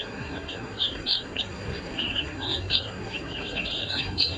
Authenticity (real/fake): fake